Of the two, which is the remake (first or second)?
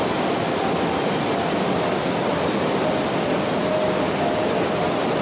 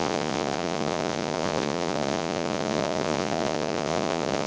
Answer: second